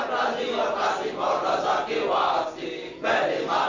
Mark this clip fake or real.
real